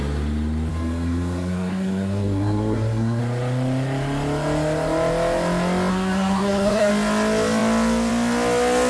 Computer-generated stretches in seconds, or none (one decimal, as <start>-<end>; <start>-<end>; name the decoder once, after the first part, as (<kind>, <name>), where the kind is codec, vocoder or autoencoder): 0.7-3.2 (codec, SNAC); 5.9-6.9